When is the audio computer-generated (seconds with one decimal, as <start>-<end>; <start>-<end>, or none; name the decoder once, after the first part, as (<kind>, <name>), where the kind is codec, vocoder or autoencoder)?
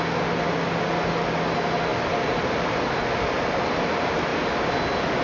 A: 1.9-3.0 (vocoder, BigVGAN v2)